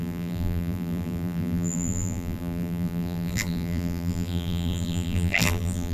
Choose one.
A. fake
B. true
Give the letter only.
A